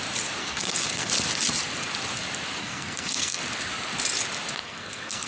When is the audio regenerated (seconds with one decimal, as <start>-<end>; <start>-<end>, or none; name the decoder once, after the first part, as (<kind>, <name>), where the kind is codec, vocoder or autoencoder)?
0.4-1.1 (codec, SNAC); 2.6-3.4; 4.6-5.3